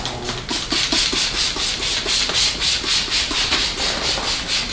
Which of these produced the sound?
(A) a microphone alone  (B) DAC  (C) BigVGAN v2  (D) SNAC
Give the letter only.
A